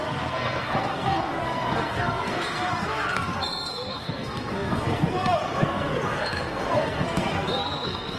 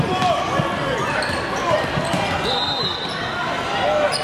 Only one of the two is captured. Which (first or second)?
second